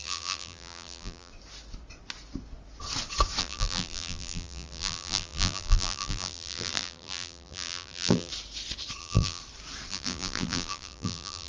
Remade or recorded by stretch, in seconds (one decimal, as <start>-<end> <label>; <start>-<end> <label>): 0.0-1.3 remade; 1.3-3.4 recorded; 3.4-8.3 remade; 8.3-9.0 recorded; 9.0-9.4 remade; 9.4-9.9 recorded; 9.9-11.5 remade